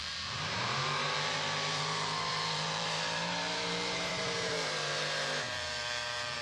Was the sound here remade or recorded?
remade